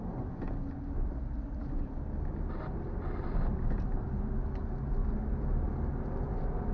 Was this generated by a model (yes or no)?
no